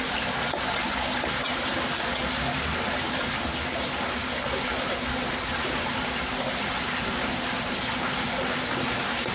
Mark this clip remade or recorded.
recorded